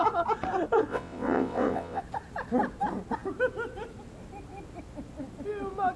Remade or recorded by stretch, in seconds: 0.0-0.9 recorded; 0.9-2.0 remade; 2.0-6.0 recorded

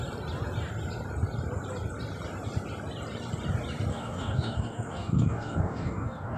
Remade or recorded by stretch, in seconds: 0.0-3.9 recorded; 3.9-6.4 remade

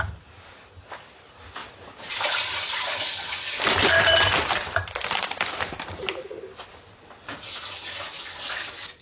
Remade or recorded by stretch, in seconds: 0.0-1.6 recorded; 1.6-5.6 remade; 5.6-9.0 recorded